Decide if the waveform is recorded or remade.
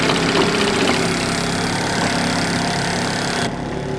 recorded